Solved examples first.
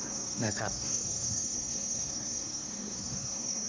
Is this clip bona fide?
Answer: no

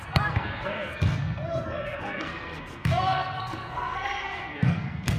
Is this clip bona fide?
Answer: no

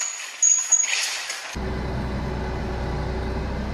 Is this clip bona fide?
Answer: yes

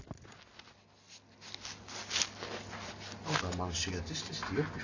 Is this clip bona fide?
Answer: yes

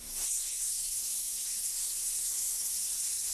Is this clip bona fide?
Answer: no